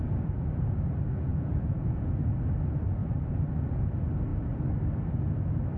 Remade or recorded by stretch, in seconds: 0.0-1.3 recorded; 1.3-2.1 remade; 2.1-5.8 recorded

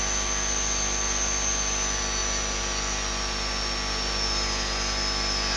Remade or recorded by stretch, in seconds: 0.0-5.6 recorded

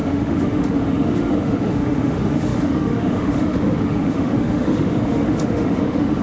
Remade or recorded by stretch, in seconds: 0.0-6.2 remade

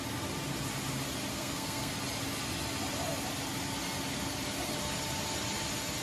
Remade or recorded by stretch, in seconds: 0.0-1.3 recorded; 1.3-1.9 remade; 1.9-6.0 recorded